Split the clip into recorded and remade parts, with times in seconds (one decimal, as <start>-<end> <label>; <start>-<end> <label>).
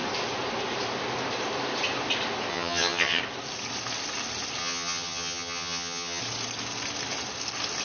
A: 0.0-2.5 recorded; 2.5-3.2 remade; 3.2-4.6 recorded; 4.6-6.2 remade; 6.2-7.8 recorded